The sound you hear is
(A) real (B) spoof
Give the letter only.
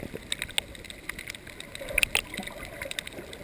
A